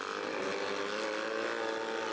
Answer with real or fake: real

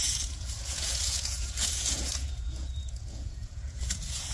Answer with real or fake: fake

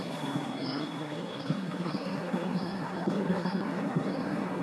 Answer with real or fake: fake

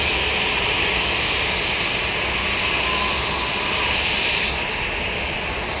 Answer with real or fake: real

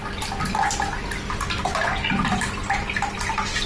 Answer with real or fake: real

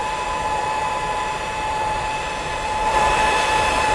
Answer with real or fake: fake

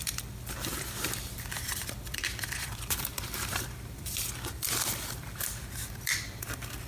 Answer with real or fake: fake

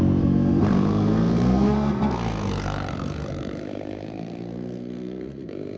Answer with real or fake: fake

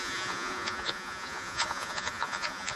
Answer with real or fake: fake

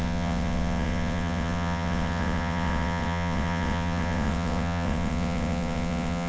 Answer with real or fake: fake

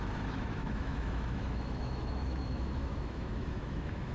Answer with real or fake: fake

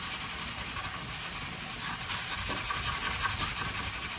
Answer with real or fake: real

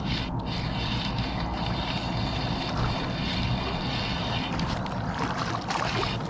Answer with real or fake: real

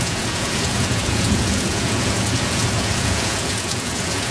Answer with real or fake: fake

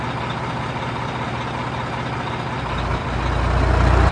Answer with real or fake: real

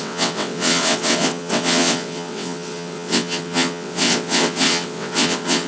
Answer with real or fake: fake